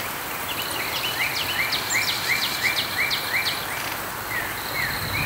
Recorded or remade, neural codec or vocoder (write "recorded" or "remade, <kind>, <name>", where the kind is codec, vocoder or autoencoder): recorded